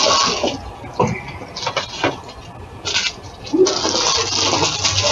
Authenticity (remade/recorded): recorded